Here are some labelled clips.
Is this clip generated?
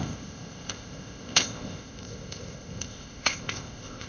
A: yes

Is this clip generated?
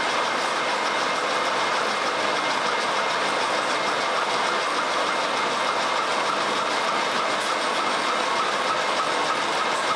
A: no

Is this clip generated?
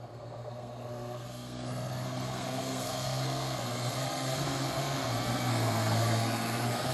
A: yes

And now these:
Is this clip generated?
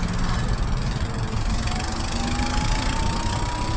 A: no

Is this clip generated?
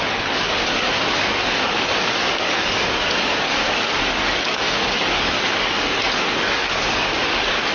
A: yes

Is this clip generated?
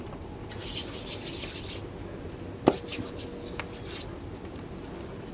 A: no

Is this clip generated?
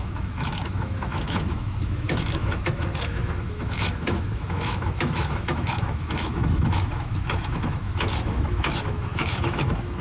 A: yes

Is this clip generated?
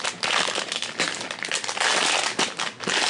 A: no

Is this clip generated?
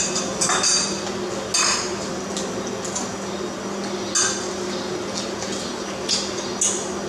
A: no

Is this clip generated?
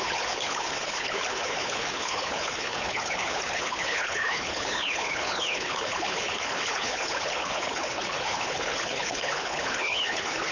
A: yes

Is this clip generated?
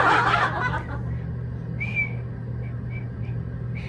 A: no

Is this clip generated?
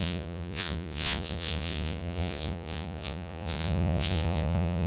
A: yes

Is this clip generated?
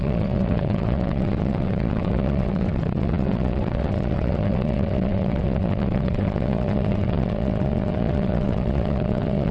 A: yes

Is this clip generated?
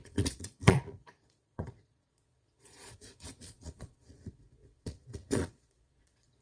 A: yes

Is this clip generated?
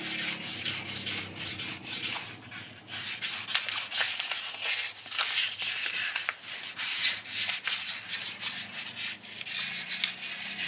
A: no